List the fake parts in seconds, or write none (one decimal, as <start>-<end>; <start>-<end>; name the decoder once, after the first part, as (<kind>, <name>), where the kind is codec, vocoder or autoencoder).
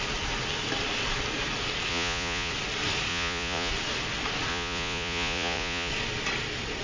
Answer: 1.9-2.5 (vocoder, Vocos); 3.1-3.7; 4.5-5.9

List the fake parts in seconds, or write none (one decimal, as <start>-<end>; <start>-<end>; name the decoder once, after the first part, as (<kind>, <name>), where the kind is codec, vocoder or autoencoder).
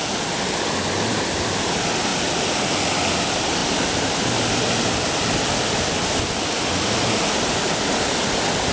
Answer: none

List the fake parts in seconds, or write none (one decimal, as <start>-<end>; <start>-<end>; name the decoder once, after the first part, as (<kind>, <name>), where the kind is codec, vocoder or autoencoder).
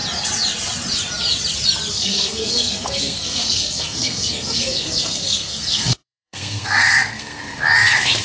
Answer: 1.9-7.4 (codec, SNAC)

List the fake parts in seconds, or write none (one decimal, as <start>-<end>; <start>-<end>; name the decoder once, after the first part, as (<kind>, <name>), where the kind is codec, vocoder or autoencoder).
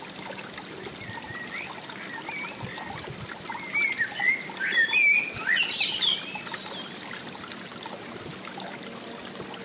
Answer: none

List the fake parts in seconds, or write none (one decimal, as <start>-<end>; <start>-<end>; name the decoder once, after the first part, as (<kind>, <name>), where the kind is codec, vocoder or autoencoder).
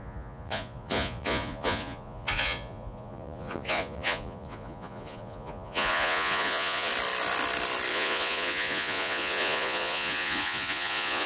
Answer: 0.0-6.9 (vocoder, Vocos); 7.9-11.3